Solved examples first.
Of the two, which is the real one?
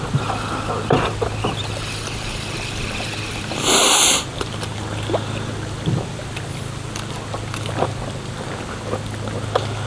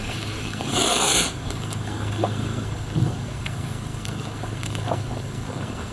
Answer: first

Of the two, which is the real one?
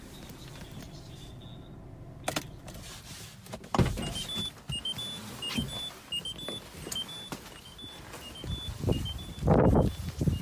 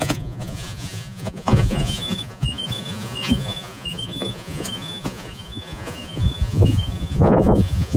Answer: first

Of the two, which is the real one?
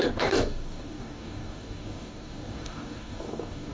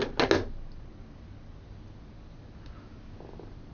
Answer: second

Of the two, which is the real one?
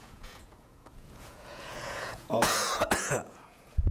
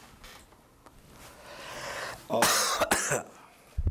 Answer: second